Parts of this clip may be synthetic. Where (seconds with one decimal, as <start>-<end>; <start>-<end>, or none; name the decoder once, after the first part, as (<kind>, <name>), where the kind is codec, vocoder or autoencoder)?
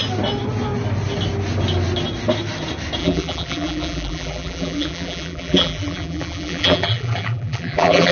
3.0-8.1 (vocoder, BigVGAN v2)